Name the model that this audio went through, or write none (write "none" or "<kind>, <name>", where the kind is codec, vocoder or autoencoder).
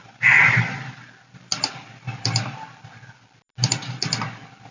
none